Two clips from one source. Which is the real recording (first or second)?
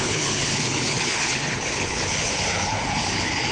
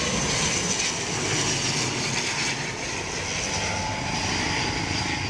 second